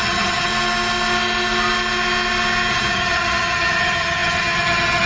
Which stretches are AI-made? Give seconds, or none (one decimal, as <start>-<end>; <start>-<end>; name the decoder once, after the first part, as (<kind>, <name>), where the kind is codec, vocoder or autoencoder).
0.0-0.5 (vocoder, HiFi-GAN); 2.7-5.1

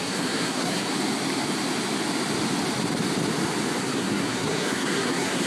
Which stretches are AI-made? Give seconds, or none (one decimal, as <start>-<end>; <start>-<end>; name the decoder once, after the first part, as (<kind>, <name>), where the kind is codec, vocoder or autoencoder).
0.0-0.9 (codec, SNAC); 3.8-5.5

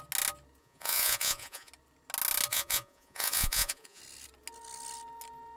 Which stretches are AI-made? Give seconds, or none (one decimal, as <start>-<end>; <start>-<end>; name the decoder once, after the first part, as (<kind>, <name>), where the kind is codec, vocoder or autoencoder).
0.6-1.7 (vocoder, Vocos); 2.5-4.0

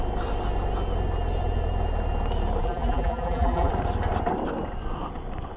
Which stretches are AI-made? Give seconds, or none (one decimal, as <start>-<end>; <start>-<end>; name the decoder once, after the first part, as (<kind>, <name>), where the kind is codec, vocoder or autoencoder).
2.6-3.7 (vocoder, BigVGAN v2)

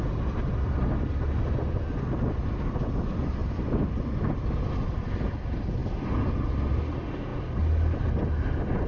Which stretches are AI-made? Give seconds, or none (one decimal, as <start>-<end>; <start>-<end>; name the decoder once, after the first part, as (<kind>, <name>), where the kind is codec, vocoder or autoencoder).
none

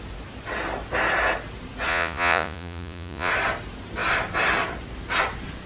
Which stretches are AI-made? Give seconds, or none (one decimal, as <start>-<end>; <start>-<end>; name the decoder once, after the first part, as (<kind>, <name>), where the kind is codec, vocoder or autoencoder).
1.9-3.3 (vocoder, Vocos)